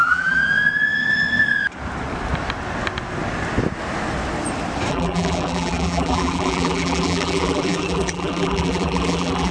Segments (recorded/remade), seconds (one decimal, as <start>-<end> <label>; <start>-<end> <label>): 0.0-0.4 remade; 0.4-4.9 recorded; 4.9-9.5 remade